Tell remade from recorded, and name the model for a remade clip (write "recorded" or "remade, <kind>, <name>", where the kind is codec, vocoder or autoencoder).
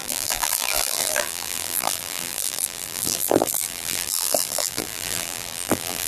remade, vocoder, BigVGAN v2